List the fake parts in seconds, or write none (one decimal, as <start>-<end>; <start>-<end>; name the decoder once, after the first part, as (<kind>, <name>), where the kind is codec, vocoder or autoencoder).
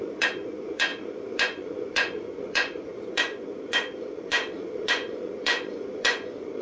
0.0-6.6 (vocoder, Vocos)